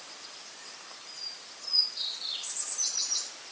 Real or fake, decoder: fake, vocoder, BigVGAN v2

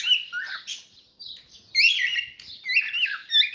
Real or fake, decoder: real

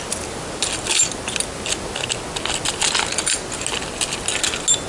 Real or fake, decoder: real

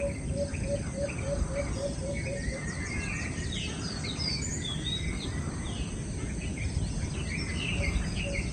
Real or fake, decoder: real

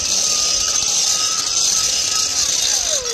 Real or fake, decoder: real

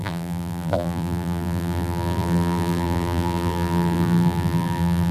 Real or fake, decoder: fake, vocoder, BigVGAN v2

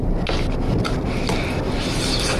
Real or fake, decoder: real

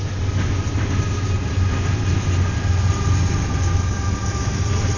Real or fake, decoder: real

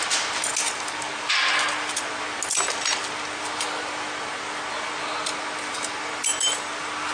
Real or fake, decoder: real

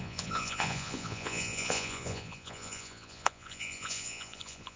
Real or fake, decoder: fake, vocoder, Vocos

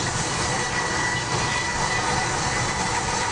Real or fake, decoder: fake, vocoder, BigVGAN v2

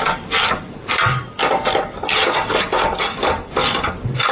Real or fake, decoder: real